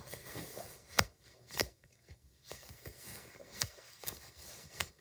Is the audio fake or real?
fake